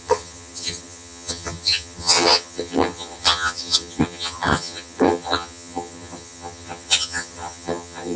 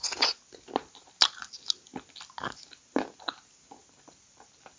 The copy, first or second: first